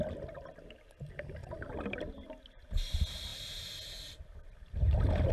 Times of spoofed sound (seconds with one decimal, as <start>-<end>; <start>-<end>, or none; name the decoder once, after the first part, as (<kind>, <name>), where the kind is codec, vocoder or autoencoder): none